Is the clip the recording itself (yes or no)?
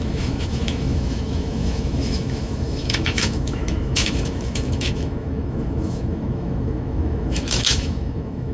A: no